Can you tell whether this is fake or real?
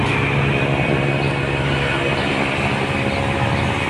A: real